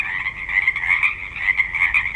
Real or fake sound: real